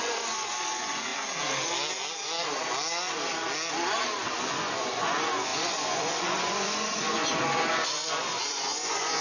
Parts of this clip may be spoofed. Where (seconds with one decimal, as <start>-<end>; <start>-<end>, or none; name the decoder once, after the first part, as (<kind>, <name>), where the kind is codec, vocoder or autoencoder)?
0.0-1.1 (vocoder, Vocos); 4.4-9.2